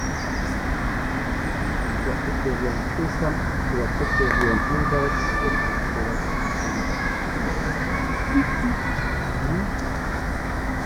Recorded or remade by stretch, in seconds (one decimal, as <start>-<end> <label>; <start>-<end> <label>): 0.0-3.1 recorded; 3.1-8.6 remade; 8.6-9.8 recorded; 9.8-10.9 remade